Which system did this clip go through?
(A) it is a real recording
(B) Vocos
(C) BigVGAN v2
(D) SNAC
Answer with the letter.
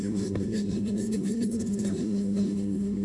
D